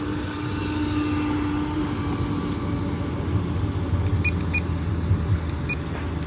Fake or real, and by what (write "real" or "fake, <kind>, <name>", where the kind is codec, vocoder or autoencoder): real